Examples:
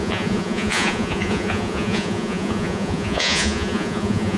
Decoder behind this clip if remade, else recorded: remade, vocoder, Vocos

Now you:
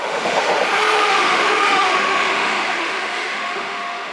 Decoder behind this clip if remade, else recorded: remade, autoencoder, DAC-VAE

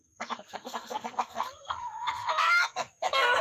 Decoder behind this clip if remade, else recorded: remade, codec, SNAC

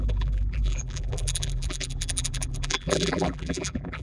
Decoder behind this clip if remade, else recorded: remade, vocoder, BigVGAN v2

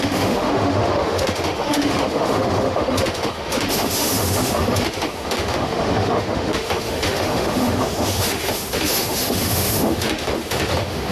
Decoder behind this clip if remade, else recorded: remade, autoencoder, DAC-VAE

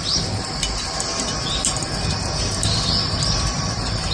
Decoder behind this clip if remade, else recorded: recorded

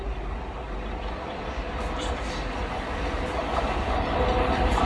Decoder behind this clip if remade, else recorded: recorded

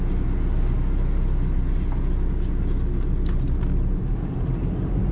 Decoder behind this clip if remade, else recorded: recorded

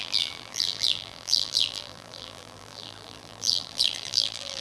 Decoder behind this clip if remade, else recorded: remade, vocoder, BigVGAN v2